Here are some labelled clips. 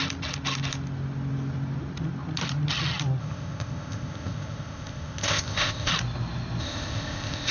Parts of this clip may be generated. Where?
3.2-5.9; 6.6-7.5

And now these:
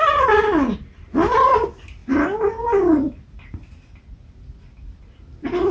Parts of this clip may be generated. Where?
none

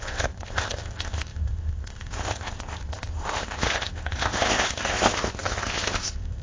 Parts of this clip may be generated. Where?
0.0-6.4

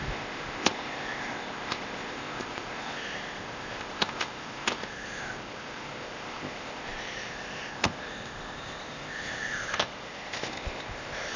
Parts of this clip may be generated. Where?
0.0-11.4